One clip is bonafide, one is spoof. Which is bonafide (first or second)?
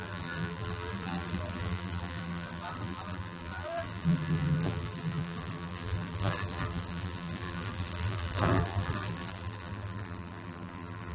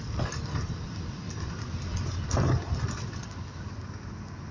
second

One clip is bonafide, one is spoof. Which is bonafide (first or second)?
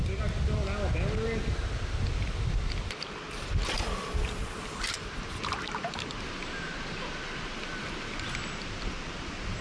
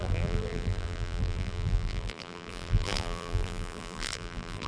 first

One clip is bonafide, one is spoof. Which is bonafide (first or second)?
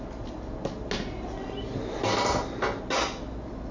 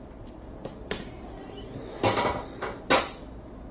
first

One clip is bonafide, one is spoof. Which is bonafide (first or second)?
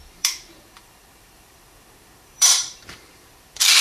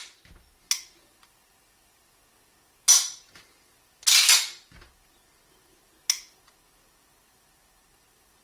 second